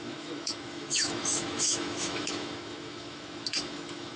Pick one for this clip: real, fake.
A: fake